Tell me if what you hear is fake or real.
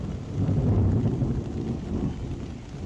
real